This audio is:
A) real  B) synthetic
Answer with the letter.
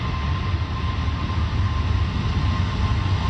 A